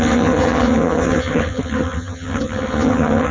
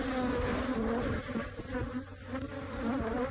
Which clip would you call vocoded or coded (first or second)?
first